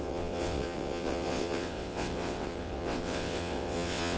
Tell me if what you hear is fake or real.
fake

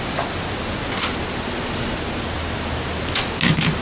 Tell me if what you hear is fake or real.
real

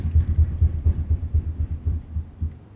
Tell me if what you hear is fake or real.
real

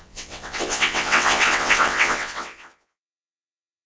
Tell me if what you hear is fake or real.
fake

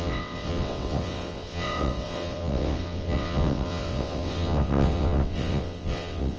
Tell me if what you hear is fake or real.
fake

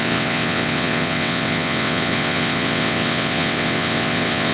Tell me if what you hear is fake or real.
fake